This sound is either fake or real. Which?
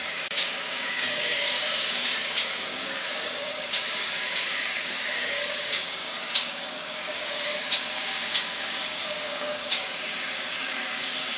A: fake